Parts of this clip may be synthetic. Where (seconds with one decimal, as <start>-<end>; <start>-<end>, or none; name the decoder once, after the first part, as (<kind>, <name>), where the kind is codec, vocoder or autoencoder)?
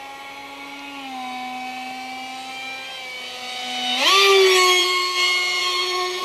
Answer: 4.8-6.2 (vocoder, BigVGAN v2)